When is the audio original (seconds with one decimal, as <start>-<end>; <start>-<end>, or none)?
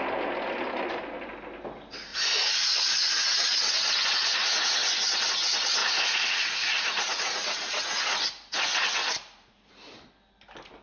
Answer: 0.0-2.1; 5.2-5.8; 8.2-9.0; 9.7-10.8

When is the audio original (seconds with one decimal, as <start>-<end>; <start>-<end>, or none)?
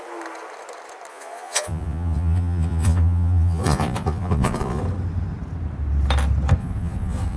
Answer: 0.0-1.1; 4.8-6.6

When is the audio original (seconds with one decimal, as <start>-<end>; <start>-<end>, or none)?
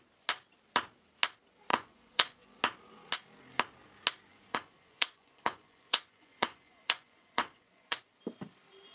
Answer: 0.0-1.7; 2.6-4.3; 8.0-8.9